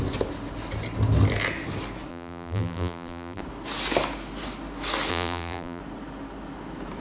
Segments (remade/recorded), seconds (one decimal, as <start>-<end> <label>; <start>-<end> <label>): 0.0-2.1 recorded; 2.1-3.4 remade; 3.4-5.1 recorded; 5.1-5.8 remade; 5.8-7.0 recorded